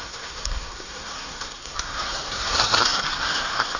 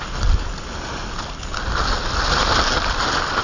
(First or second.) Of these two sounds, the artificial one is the first